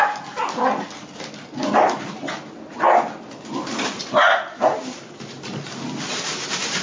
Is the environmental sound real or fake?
real